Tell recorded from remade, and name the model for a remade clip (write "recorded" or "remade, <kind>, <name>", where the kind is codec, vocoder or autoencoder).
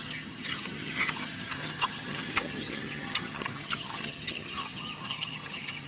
remade, vocoder, HiFi-GAN